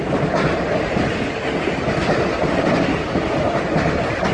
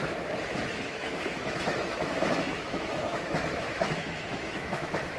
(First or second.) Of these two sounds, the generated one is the second